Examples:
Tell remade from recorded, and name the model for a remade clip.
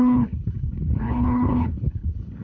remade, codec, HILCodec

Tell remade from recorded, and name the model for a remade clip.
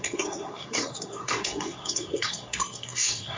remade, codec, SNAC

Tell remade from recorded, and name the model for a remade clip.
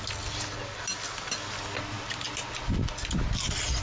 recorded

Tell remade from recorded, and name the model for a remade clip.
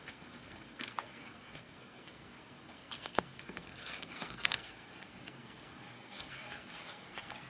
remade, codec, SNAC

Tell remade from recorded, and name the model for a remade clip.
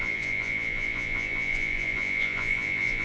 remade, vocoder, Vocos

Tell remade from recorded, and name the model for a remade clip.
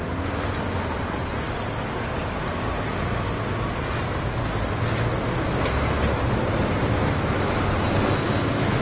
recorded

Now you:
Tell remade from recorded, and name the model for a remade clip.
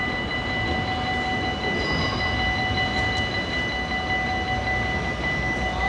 recorded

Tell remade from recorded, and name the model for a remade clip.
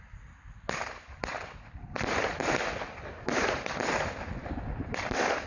recorded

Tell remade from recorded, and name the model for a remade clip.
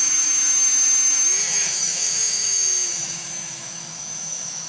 remade, autoencoder, DAC-VAE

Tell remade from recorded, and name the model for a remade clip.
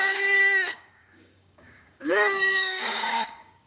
remade, codec, DAC